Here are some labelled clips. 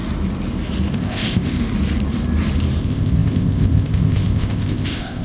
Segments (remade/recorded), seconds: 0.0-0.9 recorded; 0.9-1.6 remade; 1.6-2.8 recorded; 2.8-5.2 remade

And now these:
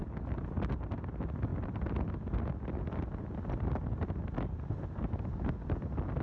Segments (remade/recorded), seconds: 0.0-6.2 recorded

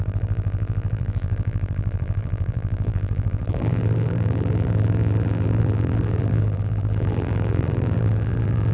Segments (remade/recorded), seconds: 0.0-8.7 remade

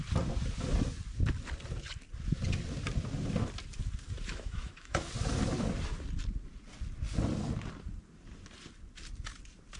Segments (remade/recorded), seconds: 0.0-4.3 recorded; 4.3-5.1 remade; 5.1-9.8 recorded

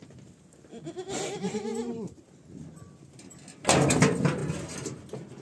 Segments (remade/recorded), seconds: 0.0-1.7 recorded; 1.7-2.3 remade; 2.3-5.4 recorded